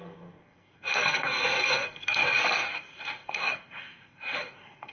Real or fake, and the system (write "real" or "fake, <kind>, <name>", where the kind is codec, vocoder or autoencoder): fake, codec, SNAC